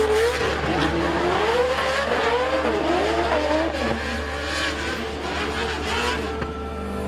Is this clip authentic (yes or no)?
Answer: yes